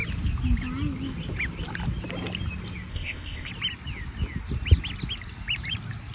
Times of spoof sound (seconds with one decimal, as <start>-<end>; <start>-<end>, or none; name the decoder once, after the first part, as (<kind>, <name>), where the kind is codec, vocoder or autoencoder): 2.9-3.5 (codec, ZipCodec)